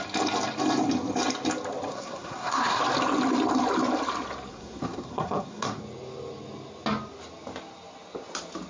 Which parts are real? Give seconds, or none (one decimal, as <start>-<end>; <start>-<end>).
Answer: 0.0-1.9; 2.8-4.5; 5.8-8.7